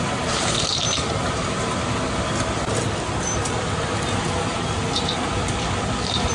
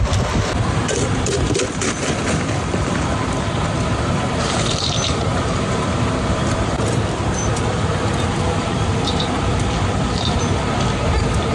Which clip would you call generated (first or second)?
second